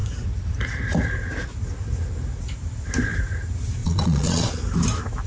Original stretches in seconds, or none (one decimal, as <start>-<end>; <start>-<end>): 0.0-3.8; 4.6-5.3